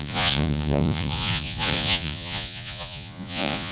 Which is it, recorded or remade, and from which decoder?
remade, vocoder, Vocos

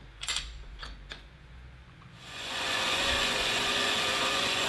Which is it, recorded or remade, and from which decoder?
remade, vocoder, Vocos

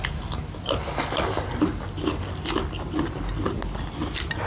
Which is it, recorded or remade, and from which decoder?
recorded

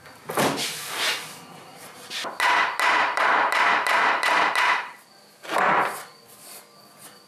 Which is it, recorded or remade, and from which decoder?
recorded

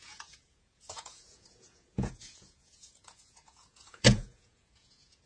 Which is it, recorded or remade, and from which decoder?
remade, vocoder, Vocos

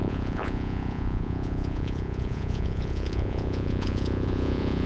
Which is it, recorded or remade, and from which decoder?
remade, vocoder, Vocos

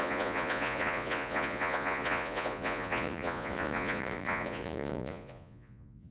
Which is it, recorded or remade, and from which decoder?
remade, vocoder, Vocos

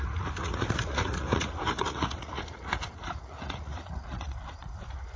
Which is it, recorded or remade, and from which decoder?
remade, vocoder, Vocos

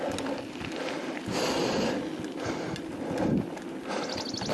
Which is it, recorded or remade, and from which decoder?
recorded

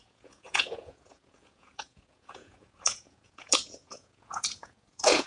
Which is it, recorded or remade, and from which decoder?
remade, vocoder, Vocos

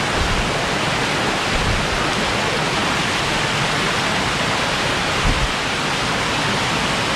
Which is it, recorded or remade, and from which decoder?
recorded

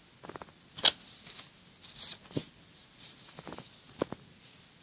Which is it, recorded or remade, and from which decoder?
recorded